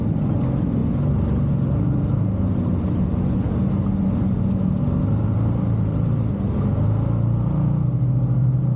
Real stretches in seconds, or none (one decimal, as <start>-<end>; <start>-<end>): 0.0-8.8